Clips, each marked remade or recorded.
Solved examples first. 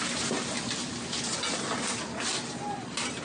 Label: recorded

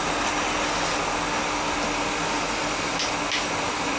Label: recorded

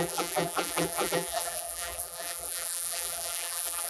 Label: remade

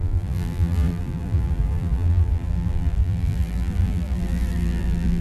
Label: remade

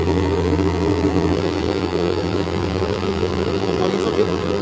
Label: remade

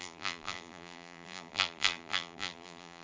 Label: remade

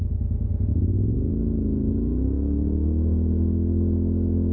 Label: recorded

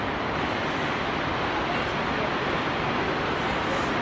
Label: recorded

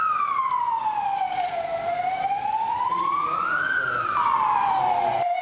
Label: recorded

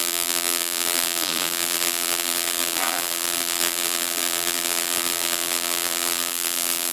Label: remade